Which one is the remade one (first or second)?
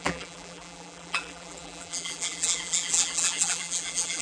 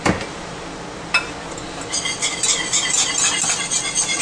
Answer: first